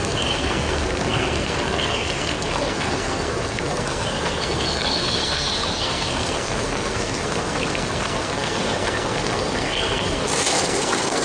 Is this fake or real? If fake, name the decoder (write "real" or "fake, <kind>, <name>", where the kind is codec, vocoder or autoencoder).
fake, codec, SNAC